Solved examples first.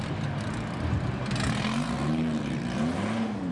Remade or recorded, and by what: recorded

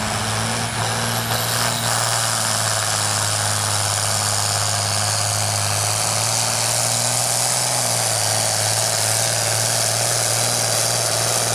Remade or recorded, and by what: recorded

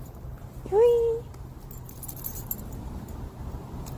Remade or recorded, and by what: recorded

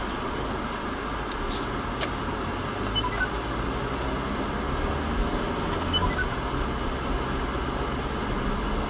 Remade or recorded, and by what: recorded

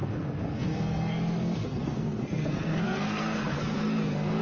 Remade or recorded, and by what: remade, codec, SNAC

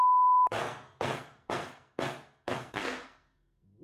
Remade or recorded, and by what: remade, codec, SNAC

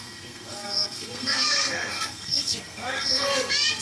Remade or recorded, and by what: remade, codec, SNAC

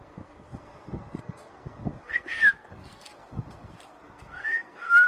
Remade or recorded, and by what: remade, codec, SNAC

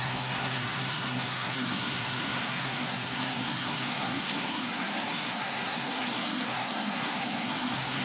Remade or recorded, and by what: remade, codec, SNAC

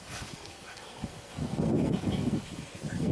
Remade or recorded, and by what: remade, codec, SNAC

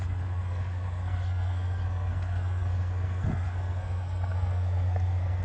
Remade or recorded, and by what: remade, codec, SNAC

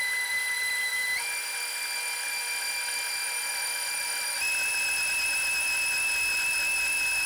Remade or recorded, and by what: recorded